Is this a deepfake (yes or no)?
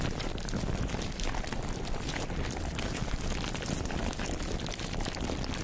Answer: no